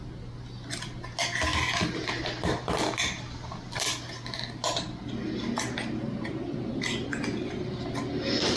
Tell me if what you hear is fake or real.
real